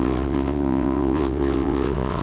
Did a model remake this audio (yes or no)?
yes